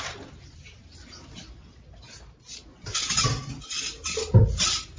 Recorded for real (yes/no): yes